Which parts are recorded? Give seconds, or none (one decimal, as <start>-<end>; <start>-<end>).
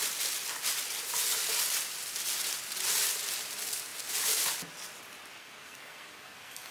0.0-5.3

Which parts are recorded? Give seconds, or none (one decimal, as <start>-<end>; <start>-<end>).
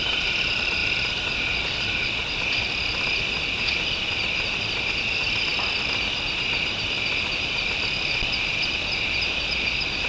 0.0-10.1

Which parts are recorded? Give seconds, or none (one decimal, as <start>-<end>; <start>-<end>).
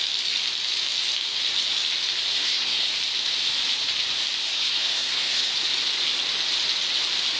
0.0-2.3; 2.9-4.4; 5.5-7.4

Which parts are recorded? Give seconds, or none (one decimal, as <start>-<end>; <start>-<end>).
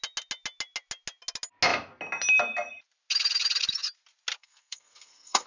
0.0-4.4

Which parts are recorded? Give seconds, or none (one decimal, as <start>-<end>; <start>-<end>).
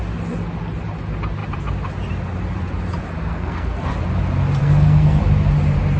0.0-3.3; 3.9-4.6; 5.2-6.0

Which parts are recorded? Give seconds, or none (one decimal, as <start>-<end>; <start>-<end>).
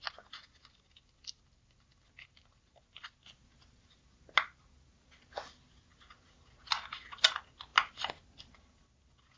0.0-9.4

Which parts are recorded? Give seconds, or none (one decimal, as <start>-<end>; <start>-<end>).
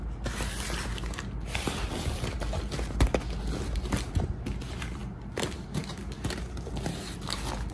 0.0-7.7